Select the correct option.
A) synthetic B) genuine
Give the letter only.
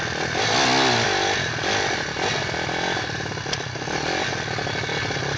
B